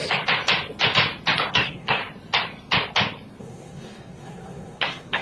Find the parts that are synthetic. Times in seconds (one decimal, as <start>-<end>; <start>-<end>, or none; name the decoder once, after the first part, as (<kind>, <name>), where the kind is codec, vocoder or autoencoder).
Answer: 1.5-2.0 (codec, SNAC); 3.4-5.2